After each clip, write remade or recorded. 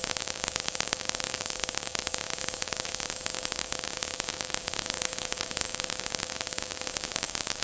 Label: remade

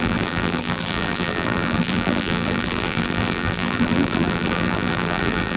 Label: remade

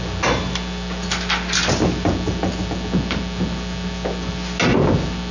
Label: recorded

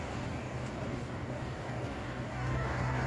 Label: remade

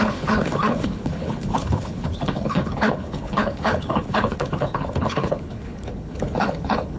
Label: remade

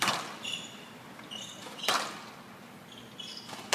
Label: recorded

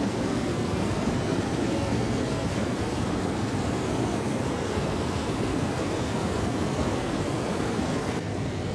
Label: remade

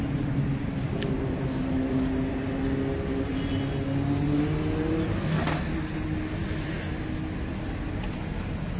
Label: recorded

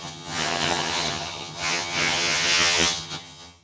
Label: remade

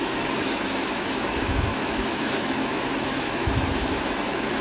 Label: remade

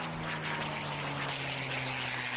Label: recorded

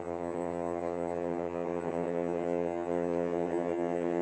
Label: remade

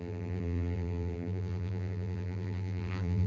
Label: remade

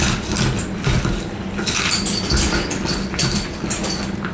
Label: recorded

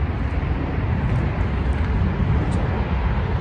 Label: recorded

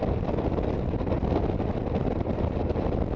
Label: recorded